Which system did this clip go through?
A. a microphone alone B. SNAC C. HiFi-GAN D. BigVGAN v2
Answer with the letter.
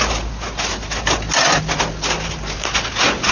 A